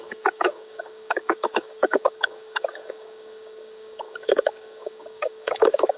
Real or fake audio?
fake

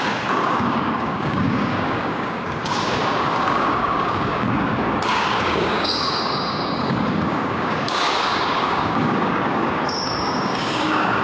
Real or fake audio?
fake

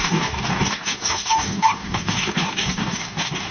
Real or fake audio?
fake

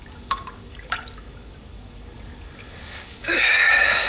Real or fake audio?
fake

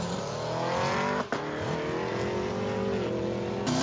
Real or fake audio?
real